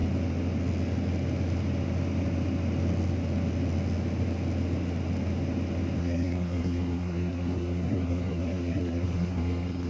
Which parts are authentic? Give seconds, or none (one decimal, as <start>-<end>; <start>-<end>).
0.0-6.0